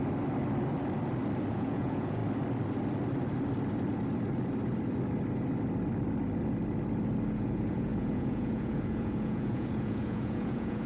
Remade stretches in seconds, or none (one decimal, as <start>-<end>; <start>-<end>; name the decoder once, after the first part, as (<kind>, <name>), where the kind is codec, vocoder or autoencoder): 1.5-2.2 (vocoder, Vocos); 7.3-10.9